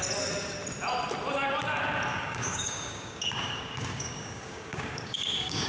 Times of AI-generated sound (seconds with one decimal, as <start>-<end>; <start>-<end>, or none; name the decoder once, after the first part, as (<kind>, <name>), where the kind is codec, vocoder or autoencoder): 2.1-5.7 (codec, DAC)